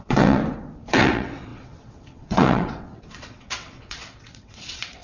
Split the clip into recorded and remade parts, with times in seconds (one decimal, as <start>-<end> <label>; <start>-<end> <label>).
0.0-0.4 remade; 0.4-0.9 recorded; 0.9-5.0 remade